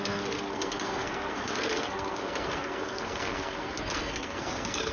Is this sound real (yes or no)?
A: no